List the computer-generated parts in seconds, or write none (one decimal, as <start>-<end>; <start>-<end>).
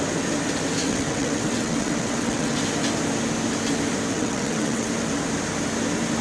0.8-2.6; 4.1-4.9